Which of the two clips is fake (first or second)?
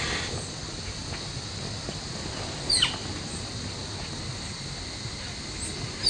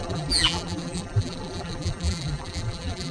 second